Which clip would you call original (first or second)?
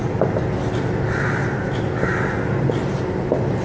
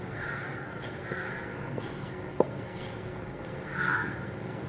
first